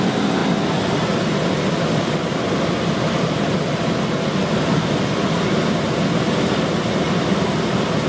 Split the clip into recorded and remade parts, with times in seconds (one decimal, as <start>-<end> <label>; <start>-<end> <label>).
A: 0.0-8.1 recorded